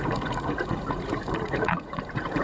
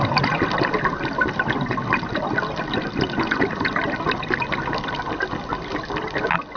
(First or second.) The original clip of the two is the second